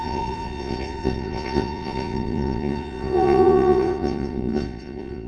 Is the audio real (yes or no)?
no